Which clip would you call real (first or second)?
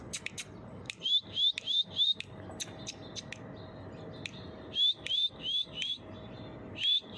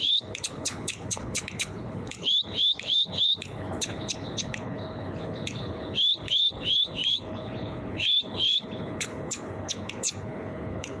first